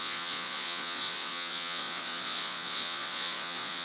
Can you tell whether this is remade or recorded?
remade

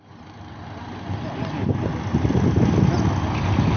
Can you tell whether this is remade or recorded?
recorded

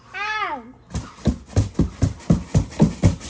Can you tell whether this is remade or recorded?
recorded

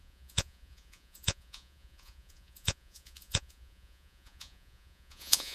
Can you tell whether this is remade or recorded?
remade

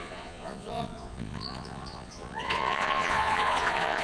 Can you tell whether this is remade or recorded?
remade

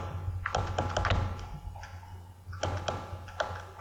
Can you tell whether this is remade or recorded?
recorded